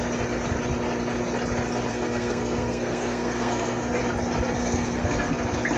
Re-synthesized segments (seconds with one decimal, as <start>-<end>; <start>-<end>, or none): 1.9-4.0; 4.6-5.3